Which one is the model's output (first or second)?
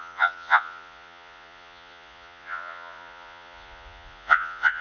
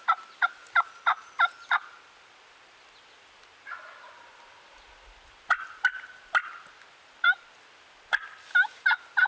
first